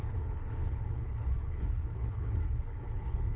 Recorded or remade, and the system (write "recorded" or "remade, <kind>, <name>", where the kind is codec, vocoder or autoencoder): remade, codec, HILCodec